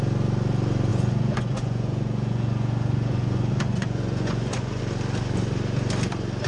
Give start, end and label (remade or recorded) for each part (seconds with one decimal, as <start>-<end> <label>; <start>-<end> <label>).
0.0-0.9 recorded; 0.9-4.8 remade; 4.8-6.5 recorded